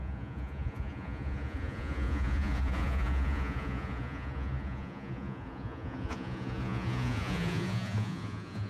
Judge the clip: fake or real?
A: fake